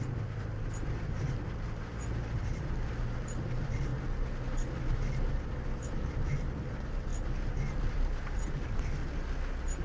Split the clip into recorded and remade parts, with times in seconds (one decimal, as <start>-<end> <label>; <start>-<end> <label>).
0.0-3.9 remade; 3.9-5.3 recorded; 5.3-7.1 remade; 7.1-7.8 recorded; 7.8-9.0 remade; 9.0-9.8 recorded

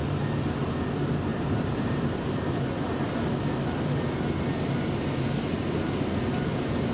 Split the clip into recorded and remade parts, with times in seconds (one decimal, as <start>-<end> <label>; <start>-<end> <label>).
0.0-1.3 recorded; 1.3-2.7 remade; 2.7-6.9 recorded

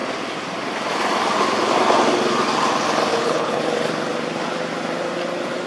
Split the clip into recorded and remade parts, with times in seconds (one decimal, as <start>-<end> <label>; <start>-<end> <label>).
0.0-3.1 recorded; 3.1-3.6 remade; 3.6-5.7 recorded